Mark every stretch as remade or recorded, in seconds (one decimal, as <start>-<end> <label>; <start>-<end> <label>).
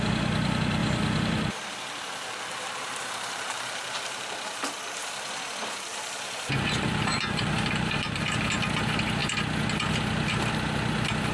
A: 0.0-0.8 recorded; 0.8-4.7 remade; 4.7-5.9 recorded; 5.9-8.5 remade; 8.5-11.3 recorded